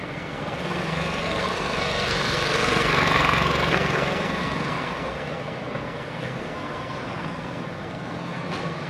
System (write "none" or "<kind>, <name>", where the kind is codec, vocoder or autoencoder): codec, SNAC